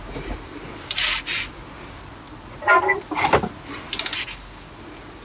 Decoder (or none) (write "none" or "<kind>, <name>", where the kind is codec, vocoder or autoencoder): none